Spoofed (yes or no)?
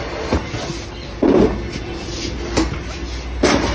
no